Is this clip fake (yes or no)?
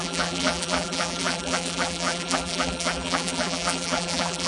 yes